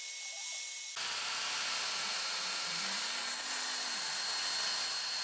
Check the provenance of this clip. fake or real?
real